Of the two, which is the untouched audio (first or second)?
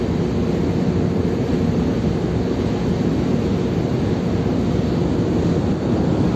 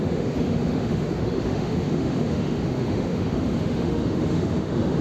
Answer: first